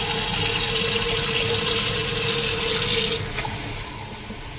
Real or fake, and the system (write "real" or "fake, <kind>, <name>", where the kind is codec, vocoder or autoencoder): real